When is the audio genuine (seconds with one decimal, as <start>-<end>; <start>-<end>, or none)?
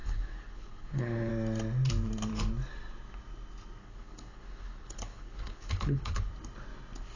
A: 1.3-3.8; 6.3-7.2